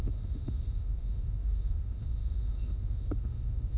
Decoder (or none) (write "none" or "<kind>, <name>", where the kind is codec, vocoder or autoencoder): autoencoder, DAC-VAE